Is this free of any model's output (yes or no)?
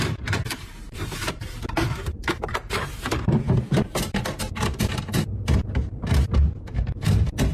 no